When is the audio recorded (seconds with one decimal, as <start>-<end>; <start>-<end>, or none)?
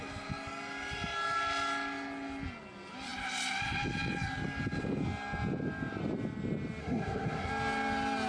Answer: 0.0-6.8; 7.5-8.3